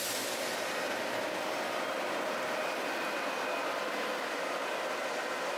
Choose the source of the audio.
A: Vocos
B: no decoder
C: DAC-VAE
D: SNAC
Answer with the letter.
B